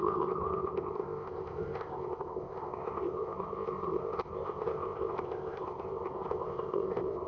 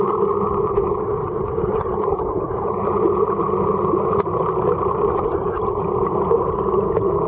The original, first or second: second